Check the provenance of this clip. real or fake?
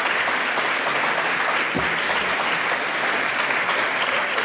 real